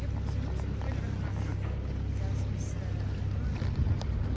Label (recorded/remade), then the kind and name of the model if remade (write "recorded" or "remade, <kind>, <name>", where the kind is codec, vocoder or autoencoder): recorded